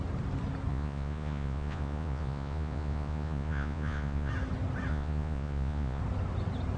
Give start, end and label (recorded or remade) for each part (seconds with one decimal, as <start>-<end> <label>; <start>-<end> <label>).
0.0-0.7 recorded; 0.7-4.3 remade; 4.3-4.9 recorded; 4.9-6.0 remade; 6.0-6.8 recorded